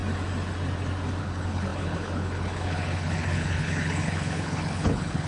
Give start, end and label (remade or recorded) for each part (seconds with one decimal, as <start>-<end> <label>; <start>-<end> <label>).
0.0-1.2 recorded; 1.2-5.3 remade